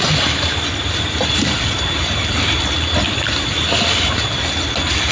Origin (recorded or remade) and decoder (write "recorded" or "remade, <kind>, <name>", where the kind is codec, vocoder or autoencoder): recorded